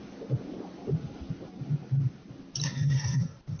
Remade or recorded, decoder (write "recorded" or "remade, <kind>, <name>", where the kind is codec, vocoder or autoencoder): recorded